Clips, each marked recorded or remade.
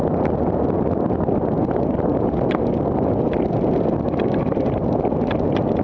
recorded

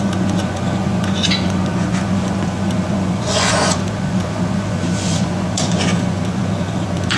remade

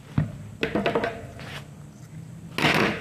recorded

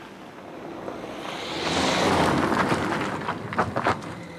recorded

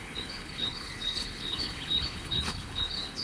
remade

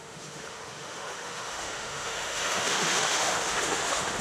remade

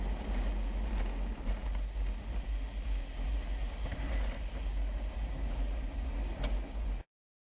recorded